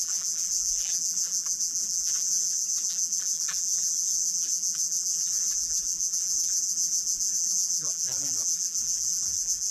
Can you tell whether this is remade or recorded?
remade